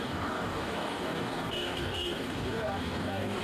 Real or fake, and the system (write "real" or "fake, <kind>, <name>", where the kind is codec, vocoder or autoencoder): fake, codec, DAC